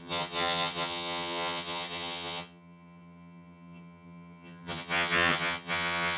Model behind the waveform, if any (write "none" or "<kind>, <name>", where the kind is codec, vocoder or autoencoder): vocoder, HiFi-GAN